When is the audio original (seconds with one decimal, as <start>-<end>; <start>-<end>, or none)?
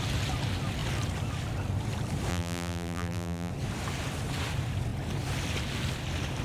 0.0-2.3; 3.5-6.4